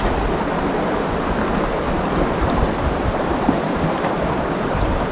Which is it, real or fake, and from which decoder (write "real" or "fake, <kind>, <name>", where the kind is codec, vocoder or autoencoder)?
real